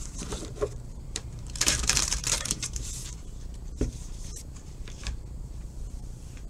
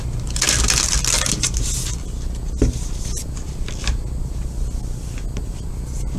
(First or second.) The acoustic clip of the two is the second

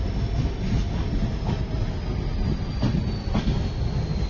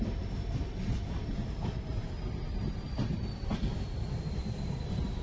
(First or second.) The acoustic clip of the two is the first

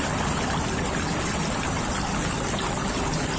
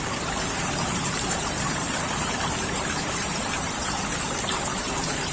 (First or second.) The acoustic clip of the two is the first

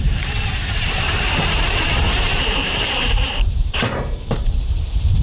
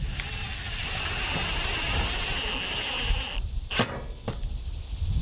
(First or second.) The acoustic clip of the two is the second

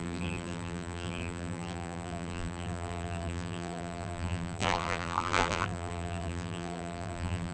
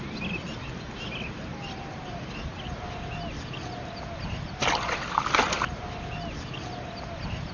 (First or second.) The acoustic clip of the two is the second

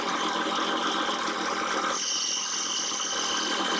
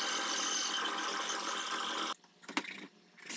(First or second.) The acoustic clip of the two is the second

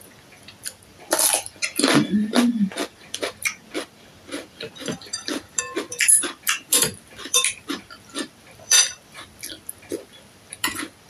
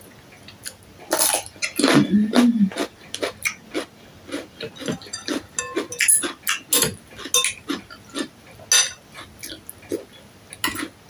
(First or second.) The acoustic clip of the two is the second